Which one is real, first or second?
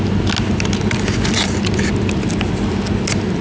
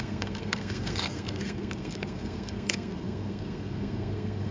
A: first